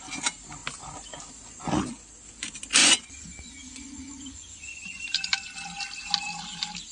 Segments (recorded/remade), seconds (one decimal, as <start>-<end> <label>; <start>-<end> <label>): 0.0-2.8 recorded; 2.8-5.0 remade; 5.0-6.9 recorded